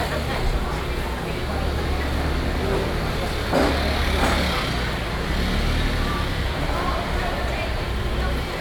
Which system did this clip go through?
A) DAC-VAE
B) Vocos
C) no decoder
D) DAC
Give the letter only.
C